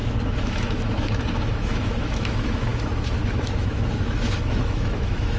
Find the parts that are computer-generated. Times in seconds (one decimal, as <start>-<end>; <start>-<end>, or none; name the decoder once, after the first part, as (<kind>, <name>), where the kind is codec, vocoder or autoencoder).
0.0-5.4 (autoencoder, DAC-VAE)